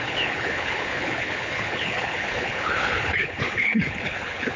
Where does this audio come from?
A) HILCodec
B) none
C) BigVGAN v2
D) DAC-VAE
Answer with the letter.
A